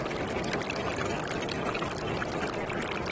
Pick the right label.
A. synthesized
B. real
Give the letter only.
B